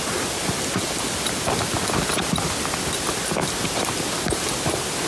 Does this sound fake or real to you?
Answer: real